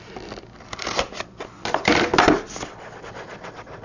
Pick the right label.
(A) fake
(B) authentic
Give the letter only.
B